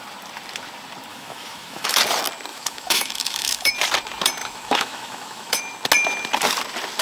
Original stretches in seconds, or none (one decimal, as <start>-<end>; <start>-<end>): 0.0-1.1; 2.0-2.5; 3.7-4.4; 5.6-7.0